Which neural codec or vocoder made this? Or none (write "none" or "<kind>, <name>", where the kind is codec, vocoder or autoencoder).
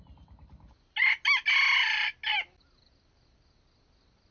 none